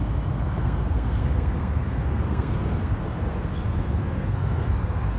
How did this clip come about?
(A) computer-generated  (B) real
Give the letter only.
A